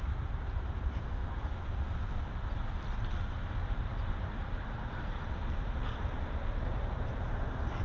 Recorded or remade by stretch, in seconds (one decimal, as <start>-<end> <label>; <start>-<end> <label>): 0.0-1.2 remade; 1.2-4.1 recorded; 4.1-7.8 remade